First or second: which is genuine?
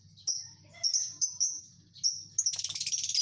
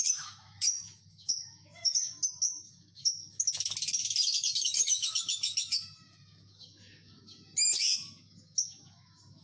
first